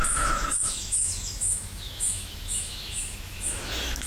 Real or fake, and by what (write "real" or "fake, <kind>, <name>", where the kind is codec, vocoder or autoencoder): fake, autoencoder, DAC-VAE